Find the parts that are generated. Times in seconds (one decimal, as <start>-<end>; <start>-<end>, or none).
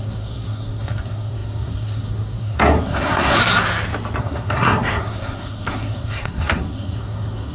0.0-3.4; 4.2-7.5